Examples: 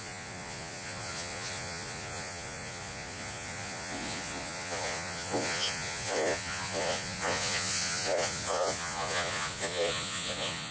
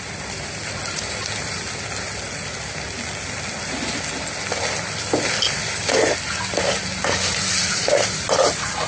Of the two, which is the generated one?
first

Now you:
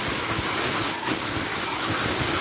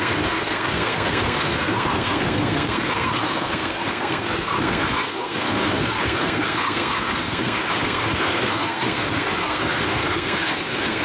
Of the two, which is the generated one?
second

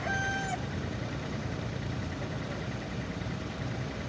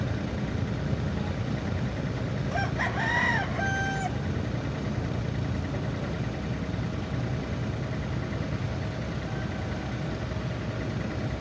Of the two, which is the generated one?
first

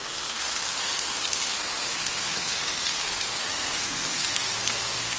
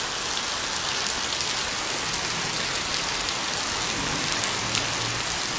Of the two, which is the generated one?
first